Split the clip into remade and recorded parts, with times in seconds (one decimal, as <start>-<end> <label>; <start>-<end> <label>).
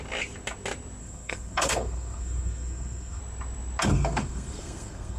0.0-1.0 recorded; 1.0-3.2 remade; 3.2-3.9 recorded; 3.9-5.2 remade